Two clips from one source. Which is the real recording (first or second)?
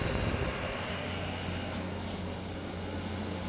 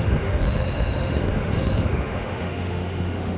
first